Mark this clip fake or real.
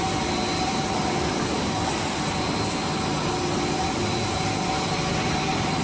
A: real